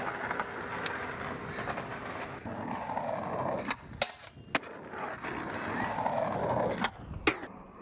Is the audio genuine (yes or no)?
yes